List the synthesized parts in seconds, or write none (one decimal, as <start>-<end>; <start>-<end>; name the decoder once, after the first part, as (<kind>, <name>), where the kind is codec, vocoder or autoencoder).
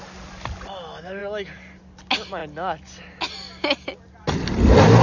none